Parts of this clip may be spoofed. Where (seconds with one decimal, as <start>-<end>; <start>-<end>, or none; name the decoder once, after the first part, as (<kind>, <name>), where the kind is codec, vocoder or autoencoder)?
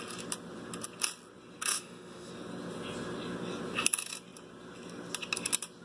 1.7-2.3 (autoencoder, DAC-VAE)